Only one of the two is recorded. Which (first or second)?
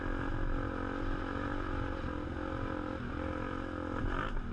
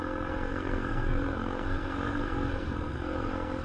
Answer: first